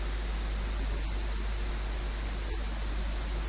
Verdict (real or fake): real